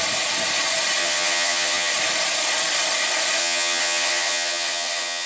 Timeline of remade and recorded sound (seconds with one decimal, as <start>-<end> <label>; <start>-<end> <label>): 0.0-1.0 recorded; 1.0-1.9 remade; 1.9-3.4 recorded; 3.4-5.3 remade

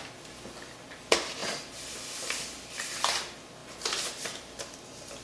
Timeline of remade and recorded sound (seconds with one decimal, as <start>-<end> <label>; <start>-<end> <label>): 0.0-5.2 recorded

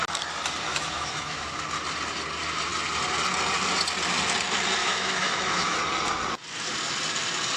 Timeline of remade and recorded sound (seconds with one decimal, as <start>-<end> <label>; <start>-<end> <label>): 0.0-0.7 recorded; 0.7-1.6 remade; 1.6-4.8 recorded; 4.8-5.8 remade; 5.8-7.6 recorded